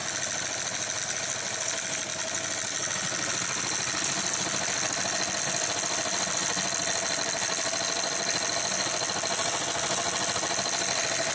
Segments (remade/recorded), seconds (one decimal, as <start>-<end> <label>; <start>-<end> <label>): 0.0-11.3 recorded